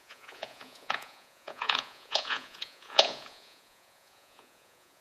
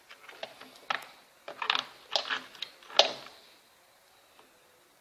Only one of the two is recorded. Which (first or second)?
second